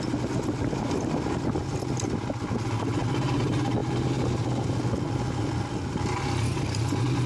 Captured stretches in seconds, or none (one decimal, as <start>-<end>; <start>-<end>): 0.0-7.3